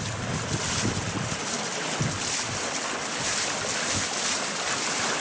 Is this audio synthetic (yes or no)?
no